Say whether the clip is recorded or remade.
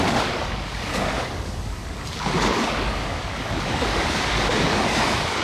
remade